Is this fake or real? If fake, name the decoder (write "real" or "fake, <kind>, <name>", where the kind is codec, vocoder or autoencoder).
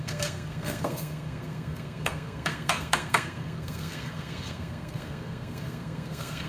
fake, codec, SNAC